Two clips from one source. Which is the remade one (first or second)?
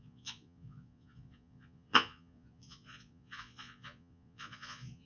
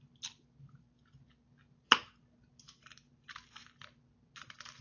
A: first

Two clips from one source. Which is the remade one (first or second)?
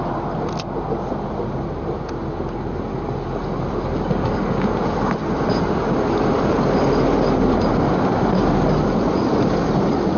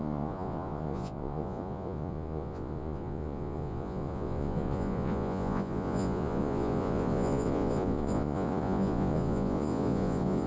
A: second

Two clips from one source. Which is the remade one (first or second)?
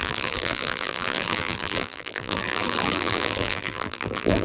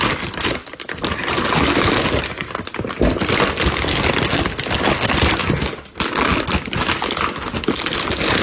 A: first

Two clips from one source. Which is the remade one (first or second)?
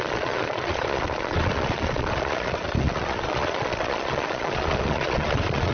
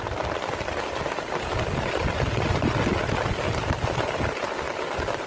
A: first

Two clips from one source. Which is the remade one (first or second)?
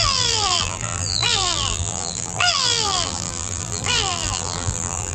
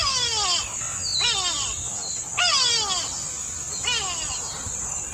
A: first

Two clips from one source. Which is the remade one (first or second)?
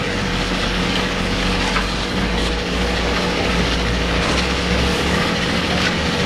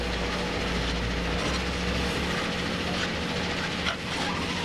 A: first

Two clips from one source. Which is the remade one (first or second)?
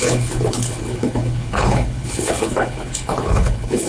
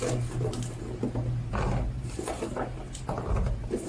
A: first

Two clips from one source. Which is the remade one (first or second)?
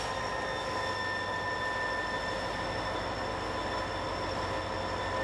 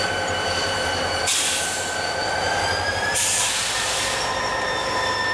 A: second